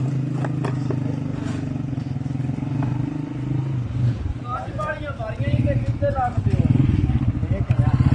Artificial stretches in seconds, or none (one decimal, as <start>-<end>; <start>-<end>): none